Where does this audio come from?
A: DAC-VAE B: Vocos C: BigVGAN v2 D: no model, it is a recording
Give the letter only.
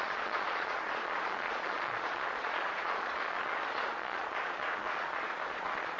B